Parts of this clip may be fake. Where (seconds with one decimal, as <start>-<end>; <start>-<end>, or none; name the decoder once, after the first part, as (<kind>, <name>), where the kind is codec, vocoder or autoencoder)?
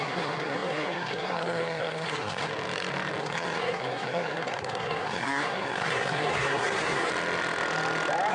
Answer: 0.0-2.5 (codec, SNAC); 3.2-7.1